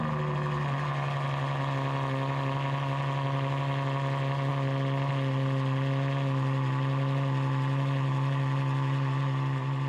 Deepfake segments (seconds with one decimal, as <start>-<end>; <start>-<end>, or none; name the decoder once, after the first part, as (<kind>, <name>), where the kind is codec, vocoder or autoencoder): none